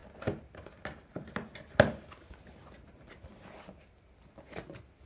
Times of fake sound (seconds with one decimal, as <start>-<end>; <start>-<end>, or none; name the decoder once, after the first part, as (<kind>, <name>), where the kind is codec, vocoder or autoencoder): none